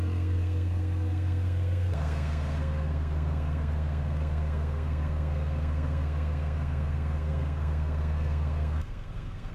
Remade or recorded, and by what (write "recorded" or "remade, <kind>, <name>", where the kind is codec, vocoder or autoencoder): remade, codec, SNAC